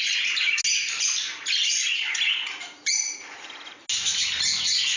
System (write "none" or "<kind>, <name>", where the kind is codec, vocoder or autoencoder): none